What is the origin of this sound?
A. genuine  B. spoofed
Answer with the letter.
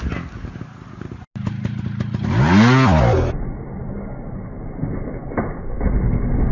A